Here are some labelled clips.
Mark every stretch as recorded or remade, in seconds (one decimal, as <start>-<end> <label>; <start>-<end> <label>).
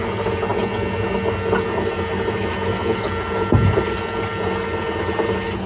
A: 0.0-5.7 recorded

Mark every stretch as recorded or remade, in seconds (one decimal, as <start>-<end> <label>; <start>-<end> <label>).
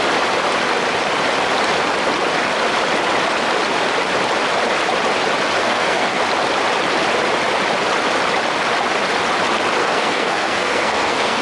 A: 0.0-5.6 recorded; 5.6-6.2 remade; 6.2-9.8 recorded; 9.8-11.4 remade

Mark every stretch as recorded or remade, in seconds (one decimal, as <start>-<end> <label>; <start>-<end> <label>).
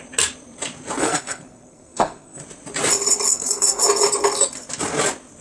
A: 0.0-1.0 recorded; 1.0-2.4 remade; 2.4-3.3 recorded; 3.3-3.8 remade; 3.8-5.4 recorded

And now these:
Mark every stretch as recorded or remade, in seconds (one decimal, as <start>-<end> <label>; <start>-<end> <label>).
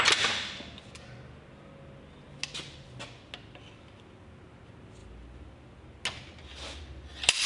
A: 0.0-7.5 recorded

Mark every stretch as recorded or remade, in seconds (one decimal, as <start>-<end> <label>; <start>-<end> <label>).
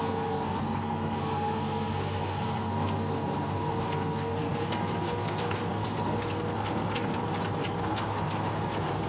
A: 0.0-7.2 remade; 7.2-7.8 recorded; 7.8-9.1 remade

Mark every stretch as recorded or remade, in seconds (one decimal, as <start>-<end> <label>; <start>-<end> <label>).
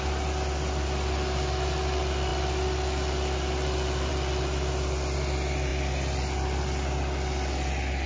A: 0.0-8.1 recorded